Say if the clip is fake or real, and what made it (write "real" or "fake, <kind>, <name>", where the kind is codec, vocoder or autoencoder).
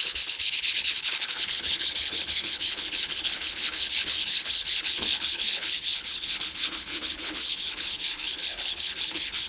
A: fake, codec, HILCodec